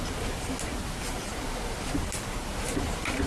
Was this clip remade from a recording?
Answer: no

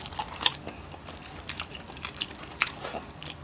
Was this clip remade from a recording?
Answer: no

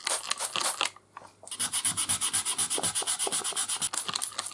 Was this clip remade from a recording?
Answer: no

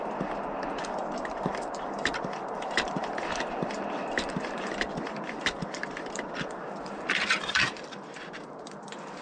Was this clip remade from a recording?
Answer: yes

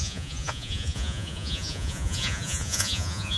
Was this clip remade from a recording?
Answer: yes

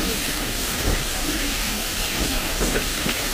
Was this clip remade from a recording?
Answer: yes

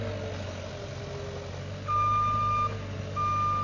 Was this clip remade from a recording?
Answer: no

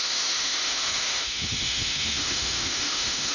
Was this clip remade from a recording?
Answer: yes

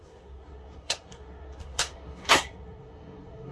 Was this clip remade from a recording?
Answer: yes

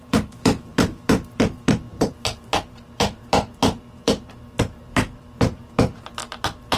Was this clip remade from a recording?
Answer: yes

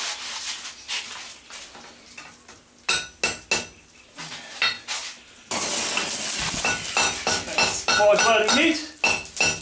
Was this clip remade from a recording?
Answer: no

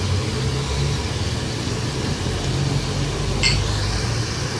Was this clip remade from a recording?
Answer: no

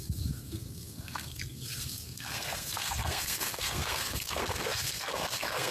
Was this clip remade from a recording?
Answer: yes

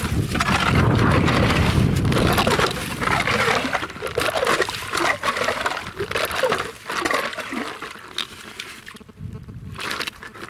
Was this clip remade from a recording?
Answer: no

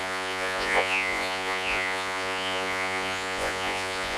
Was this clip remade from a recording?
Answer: yes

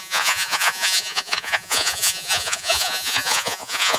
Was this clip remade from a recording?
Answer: yes